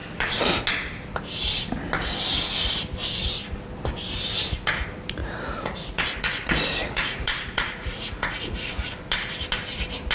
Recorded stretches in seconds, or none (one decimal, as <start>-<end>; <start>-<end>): 0.0-5.2; 8.9-10.1